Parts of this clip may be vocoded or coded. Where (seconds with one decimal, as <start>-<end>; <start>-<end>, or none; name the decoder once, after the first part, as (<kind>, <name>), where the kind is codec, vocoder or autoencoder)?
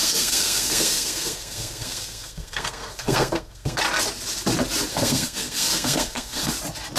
0.0-3.8 (codec, SNAC); 4.9-6.5